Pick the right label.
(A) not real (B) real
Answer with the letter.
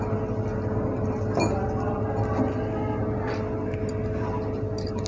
B